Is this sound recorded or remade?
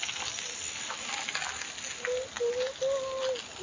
recorded